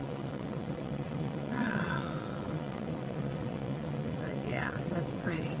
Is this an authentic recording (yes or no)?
no